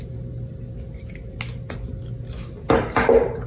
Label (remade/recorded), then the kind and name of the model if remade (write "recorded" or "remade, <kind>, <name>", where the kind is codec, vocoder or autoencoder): recorded